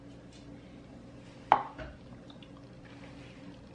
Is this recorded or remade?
recorded